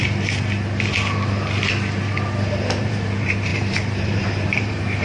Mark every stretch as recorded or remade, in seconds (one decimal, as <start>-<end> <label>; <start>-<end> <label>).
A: 0.0-2.8 recorded; 2.8-5.0 remade